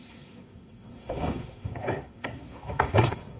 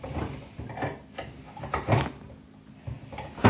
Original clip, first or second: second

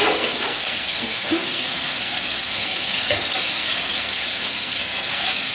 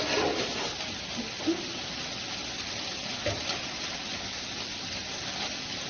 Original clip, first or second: second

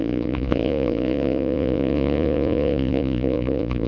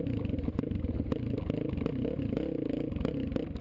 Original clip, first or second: second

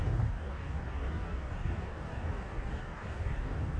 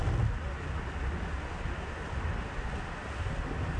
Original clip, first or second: second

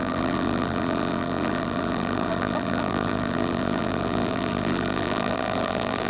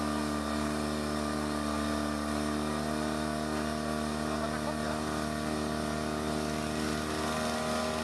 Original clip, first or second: second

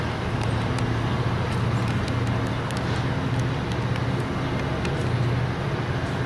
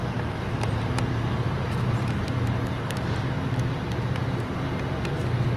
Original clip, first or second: first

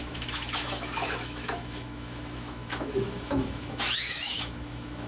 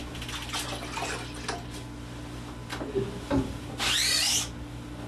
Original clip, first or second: second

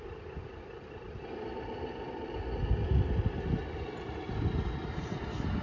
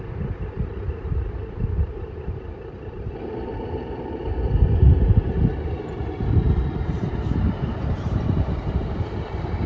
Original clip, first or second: first